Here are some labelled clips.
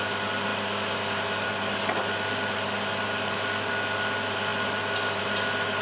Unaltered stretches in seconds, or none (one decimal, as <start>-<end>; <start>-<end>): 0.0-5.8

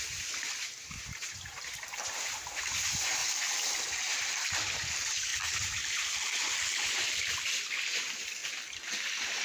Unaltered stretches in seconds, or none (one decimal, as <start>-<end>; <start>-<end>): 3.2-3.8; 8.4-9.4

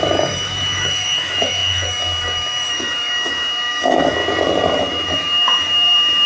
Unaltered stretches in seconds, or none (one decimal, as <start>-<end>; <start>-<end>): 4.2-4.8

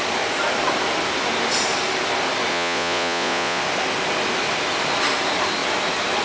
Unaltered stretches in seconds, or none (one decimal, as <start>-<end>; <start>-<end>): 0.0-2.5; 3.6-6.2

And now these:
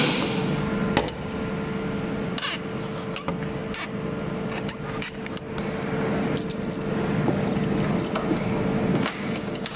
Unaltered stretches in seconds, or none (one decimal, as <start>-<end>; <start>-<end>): 0.0-8.9

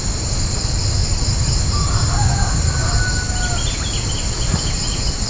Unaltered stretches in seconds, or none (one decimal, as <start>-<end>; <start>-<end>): 0.0-5.3

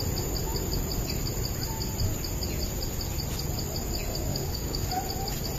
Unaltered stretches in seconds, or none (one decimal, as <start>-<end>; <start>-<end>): 0.0-4.3; 4.9-5.6